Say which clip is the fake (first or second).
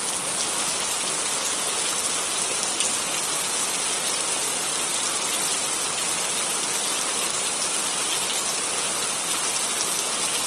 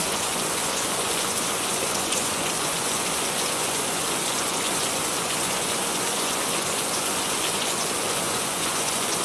second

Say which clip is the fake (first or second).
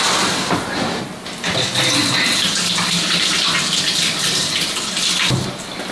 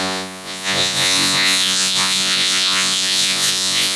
second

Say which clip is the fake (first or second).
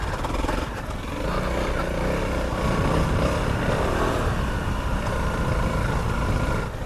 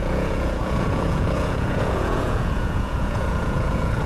second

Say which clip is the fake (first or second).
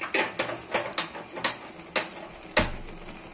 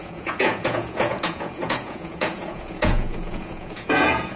second